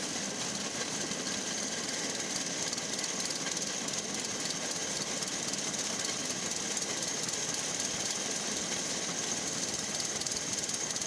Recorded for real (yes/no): yes